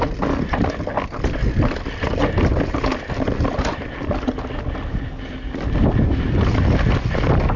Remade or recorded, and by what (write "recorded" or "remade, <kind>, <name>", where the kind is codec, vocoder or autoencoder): recorded